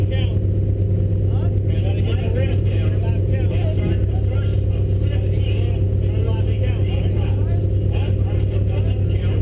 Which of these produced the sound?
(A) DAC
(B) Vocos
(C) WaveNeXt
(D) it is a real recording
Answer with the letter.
D